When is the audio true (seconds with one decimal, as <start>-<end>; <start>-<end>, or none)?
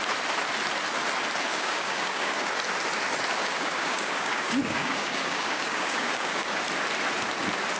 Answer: 0.0-1.5; 2.5-3.4; 6.6-7.8